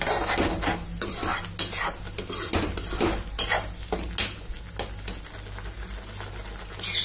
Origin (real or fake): real